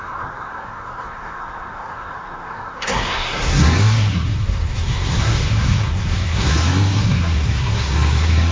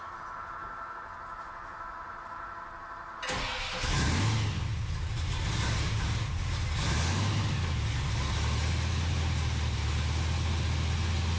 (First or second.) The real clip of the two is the second